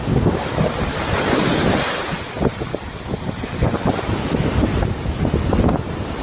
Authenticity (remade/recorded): recorded